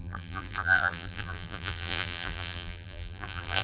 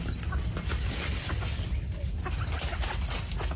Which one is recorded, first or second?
second